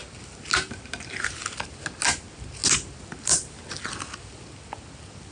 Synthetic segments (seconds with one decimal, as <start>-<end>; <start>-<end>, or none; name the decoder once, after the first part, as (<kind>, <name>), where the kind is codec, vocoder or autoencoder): none